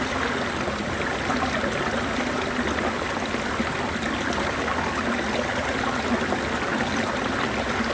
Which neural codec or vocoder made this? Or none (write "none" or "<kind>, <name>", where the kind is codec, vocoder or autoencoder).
none